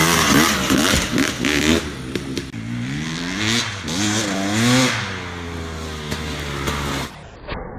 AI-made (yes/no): no